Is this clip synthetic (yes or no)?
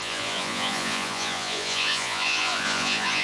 yes